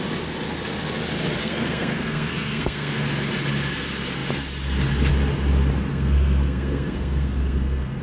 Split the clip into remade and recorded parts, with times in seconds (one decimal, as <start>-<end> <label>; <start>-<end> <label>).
0.0-1.4 recorded; 1.4-2.9 remade; 2.9-5.9 recorded; 5.9-8.0 remade